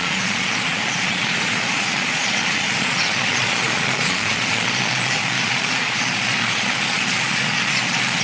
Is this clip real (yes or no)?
no